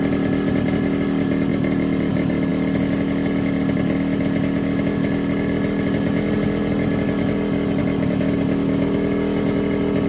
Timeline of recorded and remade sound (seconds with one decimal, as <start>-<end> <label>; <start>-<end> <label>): 0.0-10.1 recorded